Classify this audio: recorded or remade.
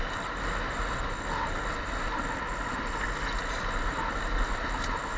recorded